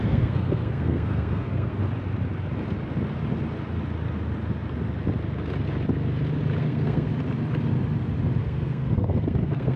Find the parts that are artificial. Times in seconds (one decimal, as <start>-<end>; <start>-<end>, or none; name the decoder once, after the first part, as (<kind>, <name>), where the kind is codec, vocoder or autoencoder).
0.0-1.8 (codec, SNAC); 6.6-7.1; 8.4-9.8